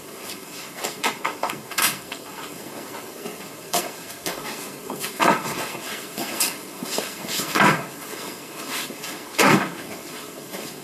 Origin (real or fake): fake